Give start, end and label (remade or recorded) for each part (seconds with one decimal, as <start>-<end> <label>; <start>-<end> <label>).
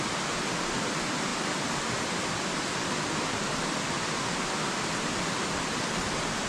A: 0.0-6.5 recorded